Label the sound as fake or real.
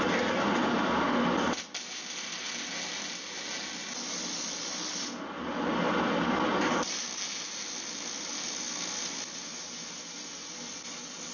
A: real